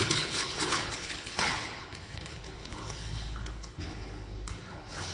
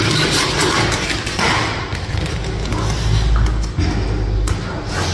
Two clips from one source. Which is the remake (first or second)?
first